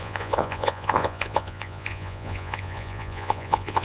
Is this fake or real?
fake